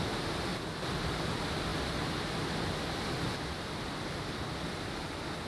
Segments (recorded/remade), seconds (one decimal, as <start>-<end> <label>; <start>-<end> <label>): 0.0-5.5 recorded